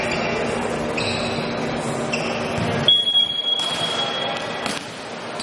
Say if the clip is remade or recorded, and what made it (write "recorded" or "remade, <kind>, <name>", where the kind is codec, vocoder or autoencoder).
recorded